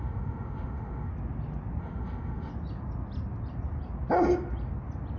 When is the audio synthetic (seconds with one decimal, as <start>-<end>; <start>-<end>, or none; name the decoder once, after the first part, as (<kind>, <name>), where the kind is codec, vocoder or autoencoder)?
0.0-1.1 (autoencoder, DAC-VAE); 1.8-2.5